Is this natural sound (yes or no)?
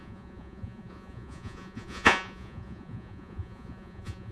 no